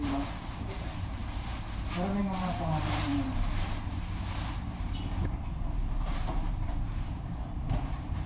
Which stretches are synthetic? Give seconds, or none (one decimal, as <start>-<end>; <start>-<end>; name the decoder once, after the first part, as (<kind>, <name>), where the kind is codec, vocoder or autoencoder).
0.0-1.2 (vocoder, BigVGAN v2); 2.2-3.1; 5.2-8.3